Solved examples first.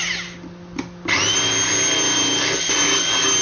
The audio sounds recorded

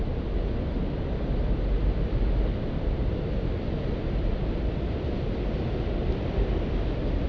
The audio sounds recorded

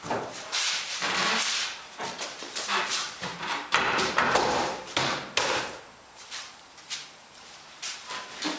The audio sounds remade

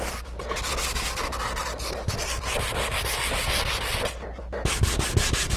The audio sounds recorded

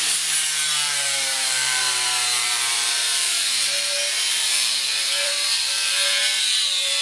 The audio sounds remade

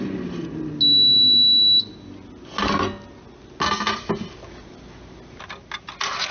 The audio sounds recorded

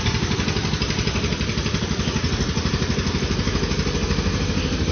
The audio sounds recorded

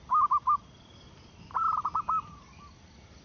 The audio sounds recorded